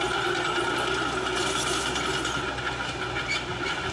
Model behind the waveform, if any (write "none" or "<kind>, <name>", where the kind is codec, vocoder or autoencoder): none